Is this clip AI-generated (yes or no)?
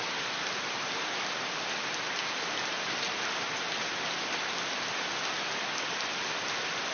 no